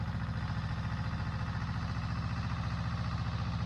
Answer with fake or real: real